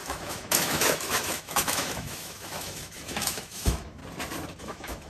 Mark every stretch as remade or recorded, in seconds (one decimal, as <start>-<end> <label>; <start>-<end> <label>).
0.0-4.0 remade; 4.0-4.6 recorded; 4.6-5.1 remade